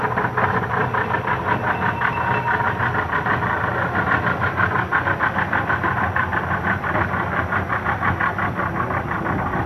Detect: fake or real real